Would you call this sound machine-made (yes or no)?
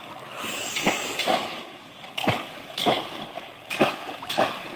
yes